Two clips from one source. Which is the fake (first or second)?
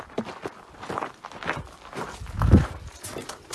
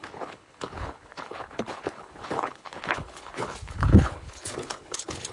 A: second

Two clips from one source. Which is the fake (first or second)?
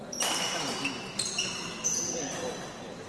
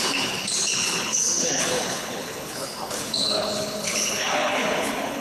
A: second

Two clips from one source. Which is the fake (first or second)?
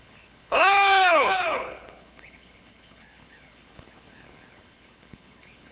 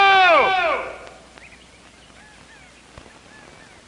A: first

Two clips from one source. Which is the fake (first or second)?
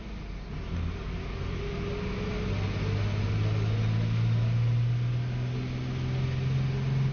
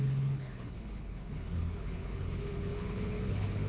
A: second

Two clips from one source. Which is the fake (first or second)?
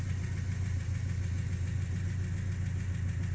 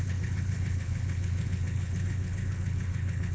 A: second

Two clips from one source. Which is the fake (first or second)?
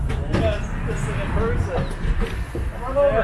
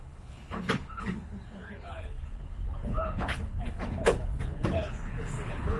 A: second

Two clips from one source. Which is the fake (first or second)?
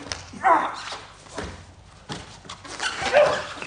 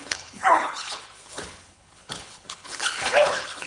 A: second